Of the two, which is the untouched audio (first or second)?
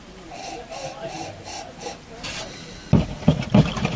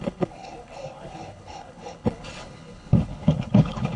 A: first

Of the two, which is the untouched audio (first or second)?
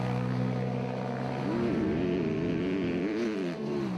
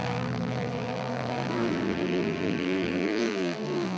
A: first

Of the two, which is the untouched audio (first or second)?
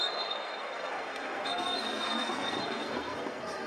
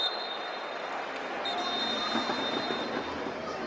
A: second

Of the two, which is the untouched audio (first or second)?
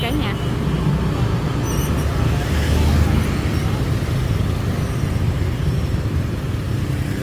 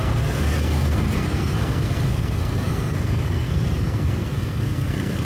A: first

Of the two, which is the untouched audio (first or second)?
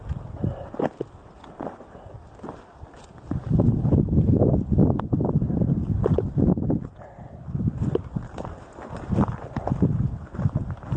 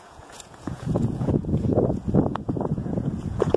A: first